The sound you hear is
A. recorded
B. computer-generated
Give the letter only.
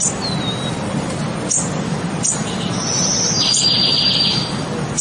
A